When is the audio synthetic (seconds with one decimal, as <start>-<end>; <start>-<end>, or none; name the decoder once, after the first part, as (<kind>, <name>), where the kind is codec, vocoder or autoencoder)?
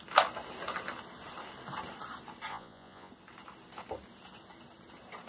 2.5-3.1 (vocoder, Vocos)